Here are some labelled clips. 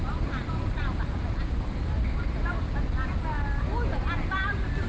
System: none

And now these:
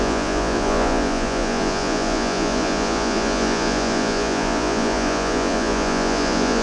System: vocoder, Vocos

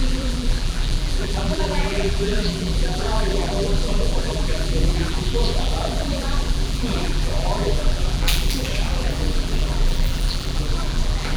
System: vocoder, BigVGAN v2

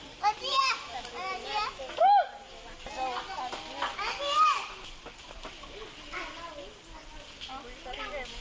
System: none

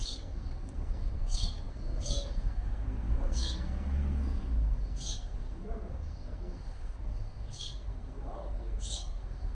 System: codec, SNAC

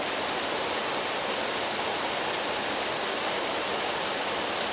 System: none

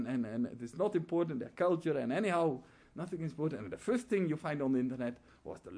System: none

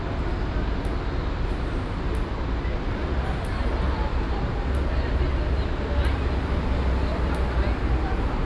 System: none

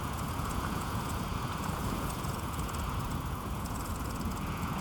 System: vocoder, Vocos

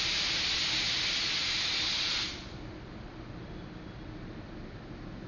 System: none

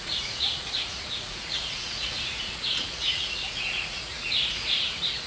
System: vocoder, Vocos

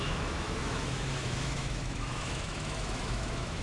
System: autoencoder, DAC-VAE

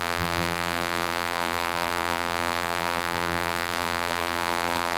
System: vocoder, BigVGAN v2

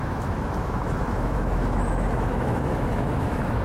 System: autoencoder, DAC-VAE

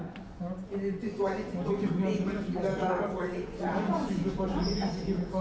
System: vocoder, Vocos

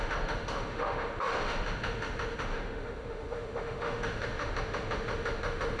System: autoencoder, DAC-VAE